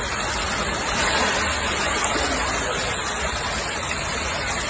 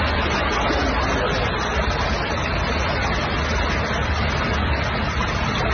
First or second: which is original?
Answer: second